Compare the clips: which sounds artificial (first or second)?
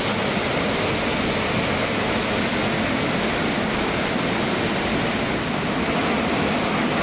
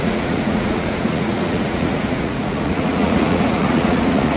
second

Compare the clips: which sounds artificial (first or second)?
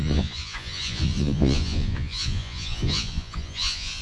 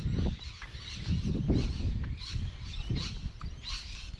first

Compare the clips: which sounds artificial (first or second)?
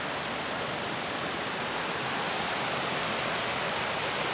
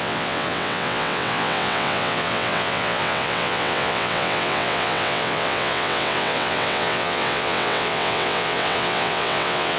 second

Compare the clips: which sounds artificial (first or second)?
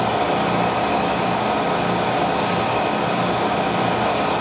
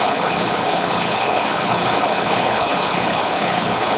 second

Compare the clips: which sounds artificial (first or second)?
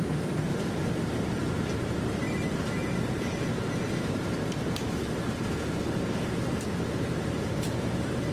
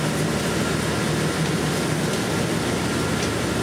first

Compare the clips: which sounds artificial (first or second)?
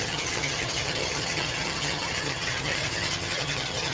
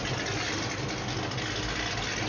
first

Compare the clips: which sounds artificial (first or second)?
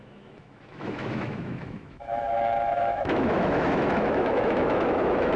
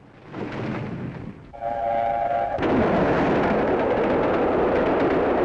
first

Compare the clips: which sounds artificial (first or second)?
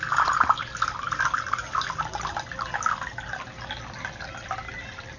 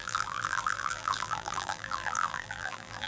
second